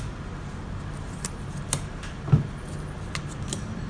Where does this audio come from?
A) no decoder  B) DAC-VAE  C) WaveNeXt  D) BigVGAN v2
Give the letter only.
A